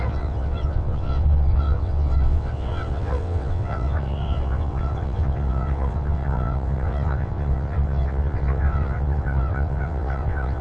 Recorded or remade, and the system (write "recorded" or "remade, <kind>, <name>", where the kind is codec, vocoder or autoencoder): remade, vocoder, WaveNeXt